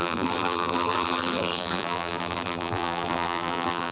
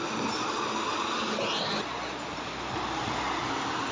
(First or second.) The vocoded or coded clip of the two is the first